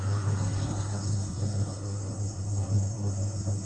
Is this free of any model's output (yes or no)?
no